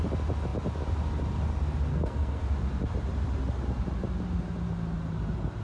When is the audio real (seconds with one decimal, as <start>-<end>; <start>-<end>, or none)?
0.0-1.9; 2.4-5.6